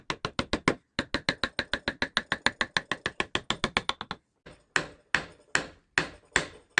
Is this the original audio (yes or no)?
yes